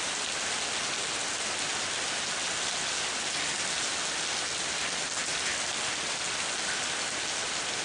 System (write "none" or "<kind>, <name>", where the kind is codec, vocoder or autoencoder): none